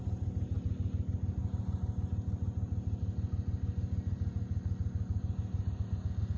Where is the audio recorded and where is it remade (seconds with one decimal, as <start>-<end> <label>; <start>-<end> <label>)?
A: 0.0-6.4 recorded